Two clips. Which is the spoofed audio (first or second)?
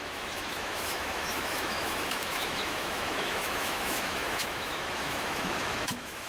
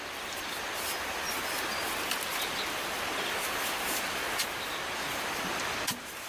first